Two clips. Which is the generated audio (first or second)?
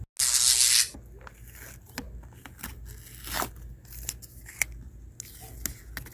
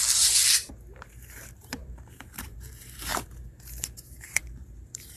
second